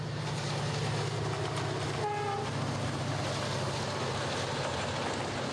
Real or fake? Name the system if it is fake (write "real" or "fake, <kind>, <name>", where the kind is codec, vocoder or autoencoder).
real